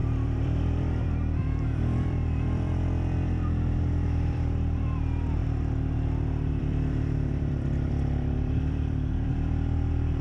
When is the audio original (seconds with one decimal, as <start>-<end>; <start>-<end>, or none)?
5.4-6.6